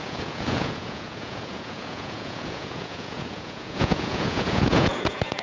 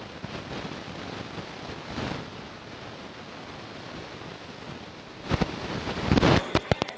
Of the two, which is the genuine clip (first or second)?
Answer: second